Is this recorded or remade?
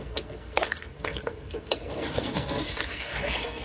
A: remade